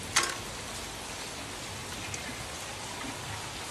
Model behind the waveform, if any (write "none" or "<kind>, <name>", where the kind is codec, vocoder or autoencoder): none